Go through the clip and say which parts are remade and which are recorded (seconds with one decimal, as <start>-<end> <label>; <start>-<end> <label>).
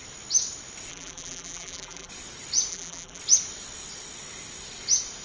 0.0-0.9 recorded; 0.9-2.1 remade; 2.1-2.7 recorded; 2.7-3.2 remade; 3.2-5.2 recorded